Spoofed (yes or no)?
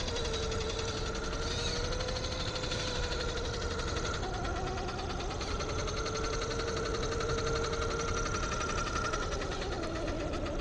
no